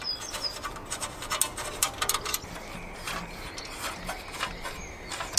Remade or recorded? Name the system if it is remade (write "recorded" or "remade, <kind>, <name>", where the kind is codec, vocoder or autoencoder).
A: recorded